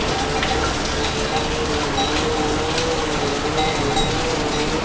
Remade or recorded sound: recorded